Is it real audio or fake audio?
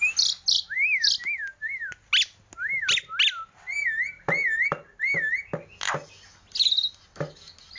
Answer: real